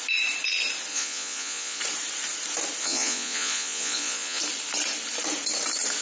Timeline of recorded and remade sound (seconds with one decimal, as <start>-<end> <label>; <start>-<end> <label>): 0.0-0.9 recorded; 0.9-1.8 remade; 1.8-2.8 recorded; 2.8-4.4 remade; 4.4-6.0 recorded